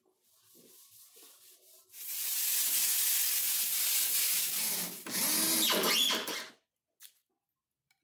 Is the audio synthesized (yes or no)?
no